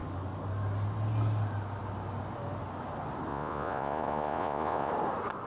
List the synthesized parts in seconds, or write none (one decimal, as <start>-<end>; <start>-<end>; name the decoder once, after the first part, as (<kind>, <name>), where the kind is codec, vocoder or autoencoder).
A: 3.3-4.9 (vocoder, Vocos)